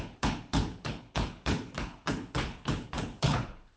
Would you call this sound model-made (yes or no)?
yes